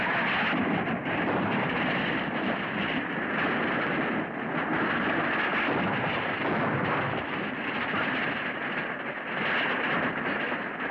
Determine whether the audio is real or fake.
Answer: real